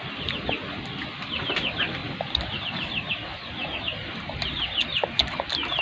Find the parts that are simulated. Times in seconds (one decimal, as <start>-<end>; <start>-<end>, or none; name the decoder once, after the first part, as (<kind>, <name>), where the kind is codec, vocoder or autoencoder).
none